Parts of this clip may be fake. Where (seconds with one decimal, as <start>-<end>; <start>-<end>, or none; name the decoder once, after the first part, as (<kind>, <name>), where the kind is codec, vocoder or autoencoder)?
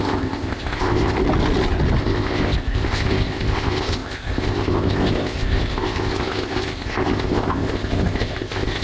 0.0-1.2 (codec, ZipCodec); 2.0-8.8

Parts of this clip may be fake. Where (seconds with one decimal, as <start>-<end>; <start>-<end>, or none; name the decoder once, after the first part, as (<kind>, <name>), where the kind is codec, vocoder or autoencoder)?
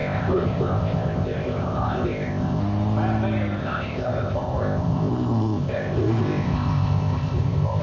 0.0-2.6 (codec, ZipCodec); 3.6-7.8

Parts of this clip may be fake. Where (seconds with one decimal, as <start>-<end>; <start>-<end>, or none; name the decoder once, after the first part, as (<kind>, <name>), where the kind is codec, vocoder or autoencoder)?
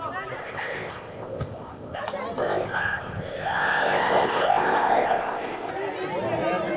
0.4-2.0 (codec, ZipCodec); 2.4-5.7